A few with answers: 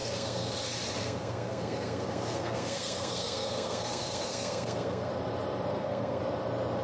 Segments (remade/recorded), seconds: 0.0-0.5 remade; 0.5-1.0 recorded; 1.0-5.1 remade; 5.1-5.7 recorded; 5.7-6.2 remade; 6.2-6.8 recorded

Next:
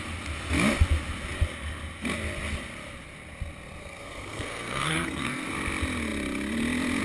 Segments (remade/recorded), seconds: 0.0-3.8 recorded; 3.8-5.5 remade; 5.5-7.0 recorded

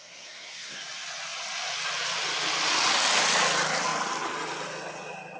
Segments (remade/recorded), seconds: 0.0-0.8 remade; 0.8-5.4 recorded

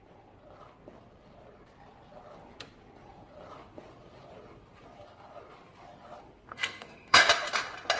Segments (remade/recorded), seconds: 0.0-6.5 recorded; 6.5-7.2 remade; 7.2-8.0 recorded

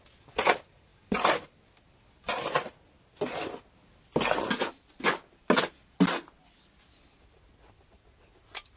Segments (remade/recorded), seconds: 0.0-8.8 recorded